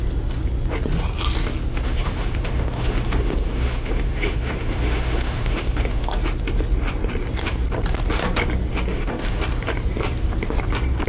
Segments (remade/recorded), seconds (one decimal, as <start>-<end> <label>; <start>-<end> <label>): 0.0-1.7 recorded; 1.7-6.1 remade; 6.1-8.9 recorded; 8.9-9.4 remade; 9.4-11.1 recorded